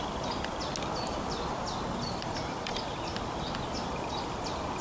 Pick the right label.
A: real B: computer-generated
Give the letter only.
A